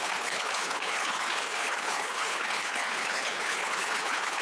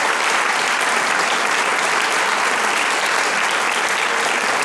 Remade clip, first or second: first